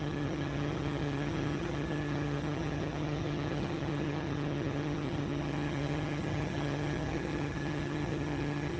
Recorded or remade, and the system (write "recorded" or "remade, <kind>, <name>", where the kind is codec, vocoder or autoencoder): remade, vocoder, HiFi-GAN